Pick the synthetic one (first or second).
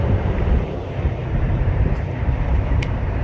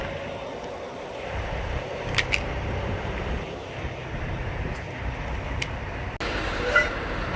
first